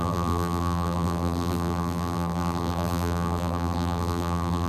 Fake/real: fake